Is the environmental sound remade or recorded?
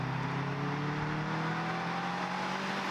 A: recorded